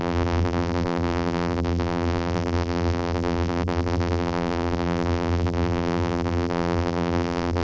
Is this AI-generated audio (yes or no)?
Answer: yes